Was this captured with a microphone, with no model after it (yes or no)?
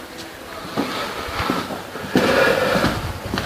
yes